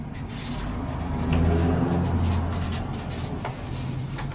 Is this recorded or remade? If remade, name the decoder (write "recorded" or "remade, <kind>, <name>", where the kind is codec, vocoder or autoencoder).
recorded